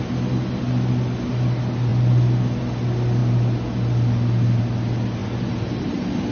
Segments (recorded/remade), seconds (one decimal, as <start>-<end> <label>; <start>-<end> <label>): 0.0-5.2 recorded; 5.2-6.3 remade